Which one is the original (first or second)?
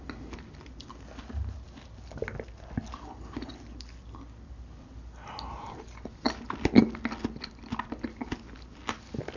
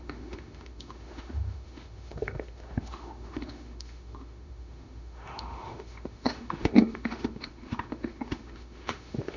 first